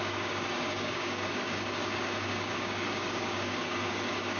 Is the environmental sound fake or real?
fake